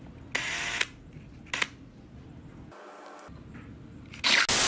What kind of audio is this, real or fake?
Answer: real